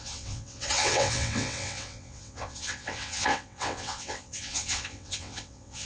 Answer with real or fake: fake